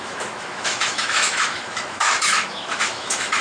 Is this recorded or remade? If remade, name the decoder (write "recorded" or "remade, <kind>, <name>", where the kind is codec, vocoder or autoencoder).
remade, autoencoder, DAC-VAE